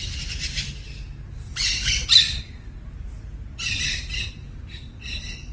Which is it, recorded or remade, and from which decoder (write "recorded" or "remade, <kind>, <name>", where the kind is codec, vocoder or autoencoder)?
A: recorded